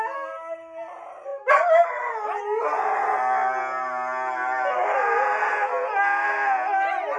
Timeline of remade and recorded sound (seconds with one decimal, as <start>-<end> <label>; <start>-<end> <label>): 0.0-7.2 recorded